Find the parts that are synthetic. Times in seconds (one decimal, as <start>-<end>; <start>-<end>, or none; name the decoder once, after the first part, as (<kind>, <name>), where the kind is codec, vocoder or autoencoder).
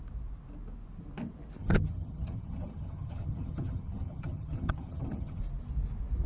1.6-5.4 (vocoder, HiFi-GAN)